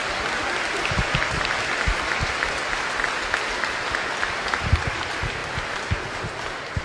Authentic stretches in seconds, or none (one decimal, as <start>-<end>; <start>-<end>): 0.0-6.8